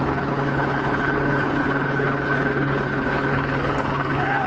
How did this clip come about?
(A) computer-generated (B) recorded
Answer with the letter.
A